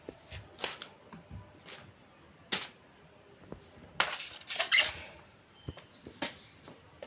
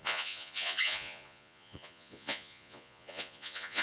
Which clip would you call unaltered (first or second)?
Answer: first